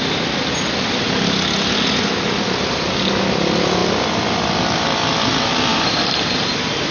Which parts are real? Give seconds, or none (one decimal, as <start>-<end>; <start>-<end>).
0.0-6.9